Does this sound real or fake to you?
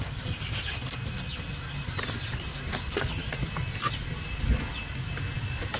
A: real